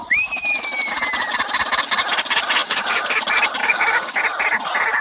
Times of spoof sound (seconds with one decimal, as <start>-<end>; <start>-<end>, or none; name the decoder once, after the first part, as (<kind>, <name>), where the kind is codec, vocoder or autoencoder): 0.0-0.9 (codec, DAC); 2.6-3.2; 3.6-4.2